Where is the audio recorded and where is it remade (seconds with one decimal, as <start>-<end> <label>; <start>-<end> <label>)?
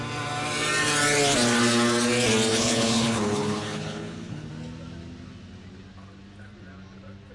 0.0-2.5 recorded; 2.5-4.5 remade; 4.5-7.3 recorded